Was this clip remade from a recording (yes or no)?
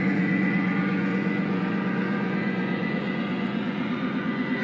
yes